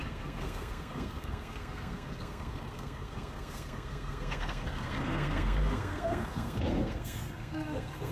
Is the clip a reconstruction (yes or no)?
yes